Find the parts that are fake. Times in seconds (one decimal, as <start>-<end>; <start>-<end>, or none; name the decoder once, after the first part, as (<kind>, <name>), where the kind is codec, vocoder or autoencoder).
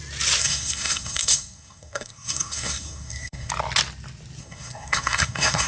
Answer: 0.4-3.5 (codec, SNAC); 4.4-5.7